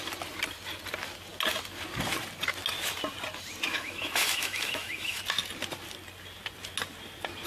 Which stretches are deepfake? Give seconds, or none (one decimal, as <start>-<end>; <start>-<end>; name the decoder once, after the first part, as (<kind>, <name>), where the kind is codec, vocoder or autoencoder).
3.7-5.2 (autoencoder, DAC-VAE)